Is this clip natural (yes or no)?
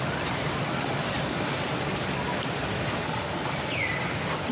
yes